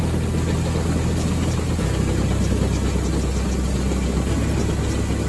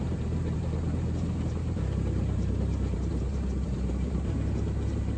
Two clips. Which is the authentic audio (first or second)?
first